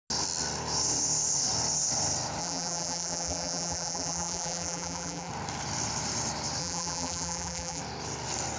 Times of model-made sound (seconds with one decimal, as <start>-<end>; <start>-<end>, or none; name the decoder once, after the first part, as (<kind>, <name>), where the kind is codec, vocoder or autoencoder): 2.4-5.3 (vocoder, BigVGAN v2); 6.6-7.8

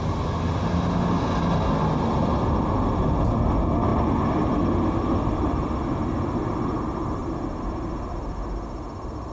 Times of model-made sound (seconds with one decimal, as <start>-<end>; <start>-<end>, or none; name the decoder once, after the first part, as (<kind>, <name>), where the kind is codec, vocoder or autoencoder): none

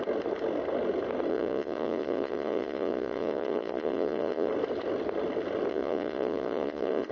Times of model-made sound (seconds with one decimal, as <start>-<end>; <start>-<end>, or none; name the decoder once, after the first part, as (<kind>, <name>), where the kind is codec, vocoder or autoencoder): 1.3-4.5 (vocoder, Vocos); 5.7-7.1

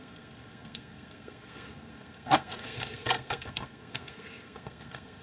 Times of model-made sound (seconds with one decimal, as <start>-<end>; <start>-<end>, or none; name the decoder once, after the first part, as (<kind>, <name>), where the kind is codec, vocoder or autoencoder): 0.0-5.2 (codec, SNAC)

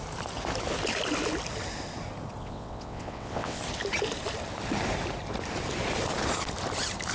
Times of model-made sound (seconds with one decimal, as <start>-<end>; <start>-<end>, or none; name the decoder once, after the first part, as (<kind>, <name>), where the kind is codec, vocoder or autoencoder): 2.4-3.6 (vocoder, WaveNeXt)

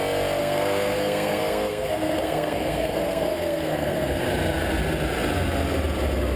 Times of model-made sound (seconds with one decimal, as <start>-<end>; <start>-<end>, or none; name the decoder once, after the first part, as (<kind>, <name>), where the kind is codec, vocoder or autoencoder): 0.4-4.2 (codec, SNAC)